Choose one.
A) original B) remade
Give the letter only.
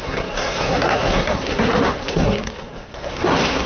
B